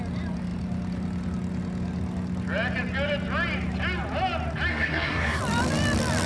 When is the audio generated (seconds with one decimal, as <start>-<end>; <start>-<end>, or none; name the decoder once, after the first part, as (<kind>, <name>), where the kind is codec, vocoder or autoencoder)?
4.7-5.4 (codec, SNAC)